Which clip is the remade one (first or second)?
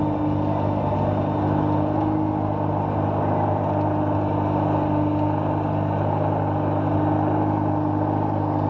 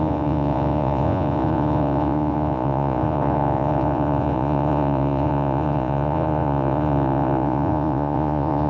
second